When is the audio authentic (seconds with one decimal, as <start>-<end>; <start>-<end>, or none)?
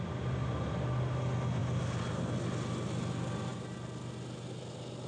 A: 0.0-5.1